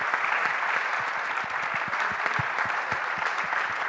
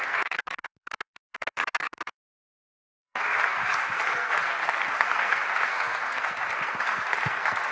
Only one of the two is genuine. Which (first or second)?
first